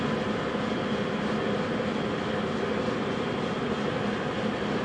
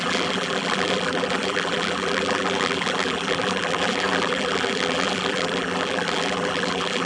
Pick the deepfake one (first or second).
second